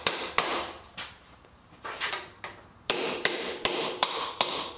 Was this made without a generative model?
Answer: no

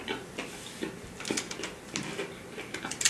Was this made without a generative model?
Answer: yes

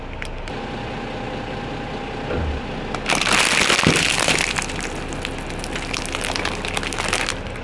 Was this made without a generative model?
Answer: yes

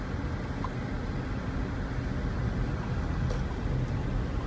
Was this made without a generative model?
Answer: yes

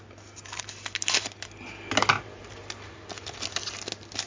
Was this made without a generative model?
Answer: yes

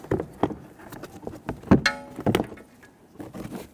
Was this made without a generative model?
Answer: yes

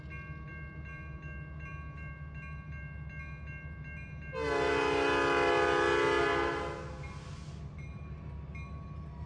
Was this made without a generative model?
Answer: yes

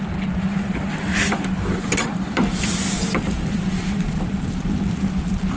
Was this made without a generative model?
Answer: no